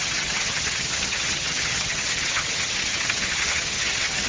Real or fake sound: fake